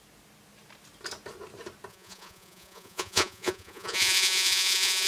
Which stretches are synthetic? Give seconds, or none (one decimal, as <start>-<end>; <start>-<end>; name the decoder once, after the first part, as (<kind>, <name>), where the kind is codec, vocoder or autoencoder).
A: 1.9-5.1 (vocoder, Vocos)